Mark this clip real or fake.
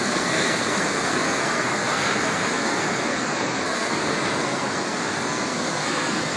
fake